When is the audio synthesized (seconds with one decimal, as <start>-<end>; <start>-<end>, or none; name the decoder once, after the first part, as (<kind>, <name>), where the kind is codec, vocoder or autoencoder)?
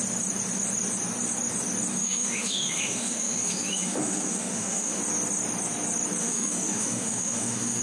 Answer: 2.0-5.0 (autoencoder, DAC-VAE); 6.2-7.8